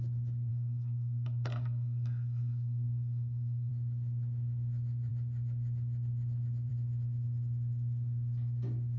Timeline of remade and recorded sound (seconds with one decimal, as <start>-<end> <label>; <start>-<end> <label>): 0.0-0.5 recorded; 0.5-3.7 remade; 3.7-9.0 recorded